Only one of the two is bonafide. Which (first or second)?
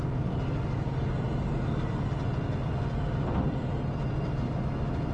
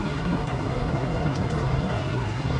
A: first